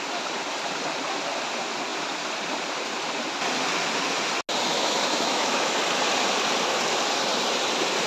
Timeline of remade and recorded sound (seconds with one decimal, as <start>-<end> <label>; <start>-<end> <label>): 0.0-4.7 recorded; 4.7-5.8 remade; 5.8-8.1 recorded